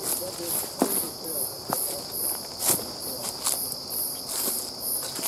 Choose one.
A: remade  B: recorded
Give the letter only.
B